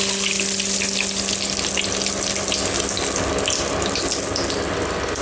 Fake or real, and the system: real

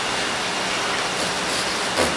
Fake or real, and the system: real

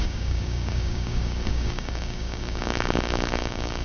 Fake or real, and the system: fake, codec, DAC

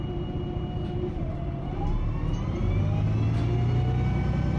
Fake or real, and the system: real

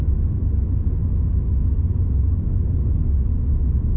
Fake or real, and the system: real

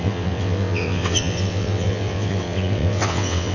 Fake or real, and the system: fake, vocoder, WaveNeXt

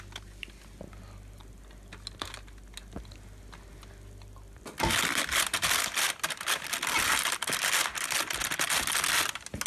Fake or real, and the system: real